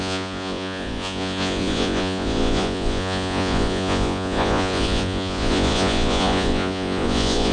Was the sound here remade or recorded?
remade